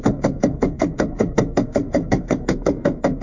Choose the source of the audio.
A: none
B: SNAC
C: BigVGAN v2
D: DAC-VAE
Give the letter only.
B